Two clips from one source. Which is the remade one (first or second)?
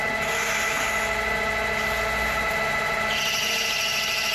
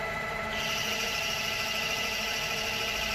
second